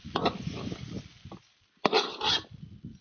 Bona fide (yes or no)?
yes